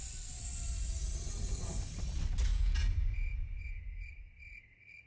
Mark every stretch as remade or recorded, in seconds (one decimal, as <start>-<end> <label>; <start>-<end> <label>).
0.0-2.5 recorded; 2.5-4.1 remade; 4.1-5.1 recorded